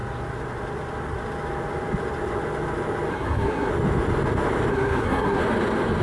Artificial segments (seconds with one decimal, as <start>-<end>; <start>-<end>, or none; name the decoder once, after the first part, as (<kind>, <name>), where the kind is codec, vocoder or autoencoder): 3.1-3.7 (codec, SNAC); 4.7-5.4